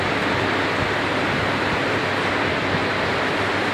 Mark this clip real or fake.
real